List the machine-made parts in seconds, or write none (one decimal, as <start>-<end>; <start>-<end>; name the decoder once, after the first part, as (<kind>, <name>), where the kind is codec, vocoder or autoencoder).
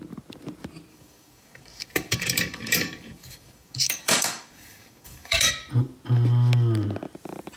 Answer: 0.9-5.5 (codec, DAC)